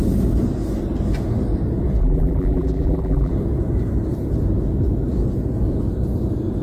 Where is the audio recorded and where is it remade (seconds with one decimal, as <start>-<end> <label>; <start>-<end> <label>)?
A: 0.0-2.0 recorded; 2.0-3.3 remade; 3.3-6.6 recorded